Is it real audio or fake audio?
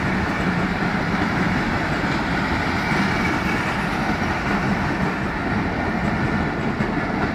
real